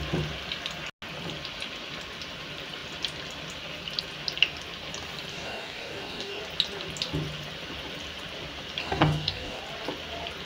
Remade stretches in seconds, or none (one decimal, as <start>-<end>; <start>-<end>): 5.3-6.4; 8.8-9.6